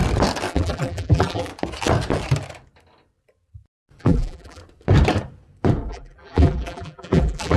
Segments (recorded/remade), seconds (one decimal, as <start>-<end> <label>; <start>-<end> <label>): 0.0-0.5 recorded; 0.5-1.5 remade; 1.5-4.0 recorded; 4.0-4.6 remade; 4.6-5.9 recorded; 5.9-7.6 remade